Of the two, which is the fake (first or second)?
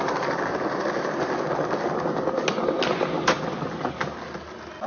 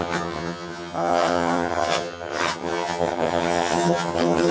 second